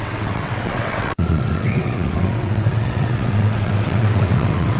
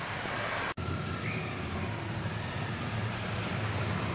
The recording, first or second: second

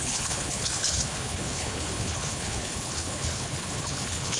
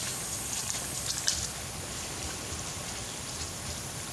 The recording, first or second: second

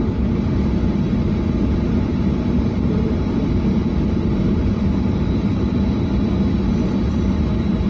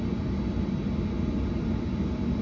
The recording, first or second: second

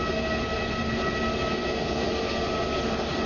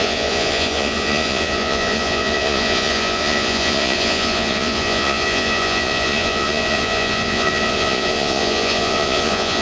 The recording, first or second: first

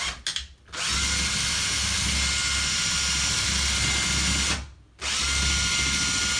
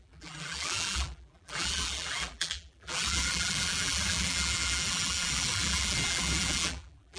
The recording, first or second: first